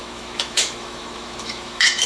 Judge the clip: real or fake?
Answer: fake